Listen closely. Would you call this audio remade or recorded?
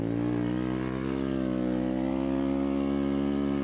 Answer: recorded